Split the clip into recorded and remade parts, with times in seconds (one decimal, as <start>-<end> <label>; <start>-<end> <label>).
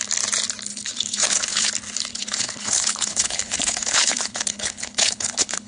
0.0-0.7 recorded; 0.7-1.7 remade; 1.7-2.1 recorded; 2.1-5.7 remade